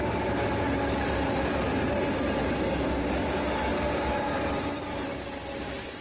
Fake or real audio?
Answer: real